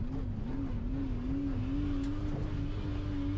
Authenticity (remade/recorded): recorded